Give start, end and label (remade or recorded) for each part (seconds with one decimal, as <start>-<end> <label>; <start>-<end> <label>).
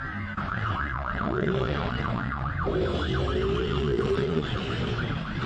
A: 0.0-0.5 recorded; 0.5-2.5 remade; 2.5-3.6 recorded; 3.6-4.6 remade; 4.6-5.5 recorded